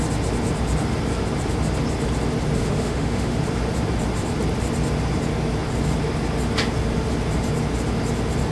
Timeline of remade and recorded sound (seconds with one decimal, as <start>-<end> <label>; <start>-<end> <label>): 0.0-2.6 recorded; 2.6-3.4 remade; 3.4-8.5 recorded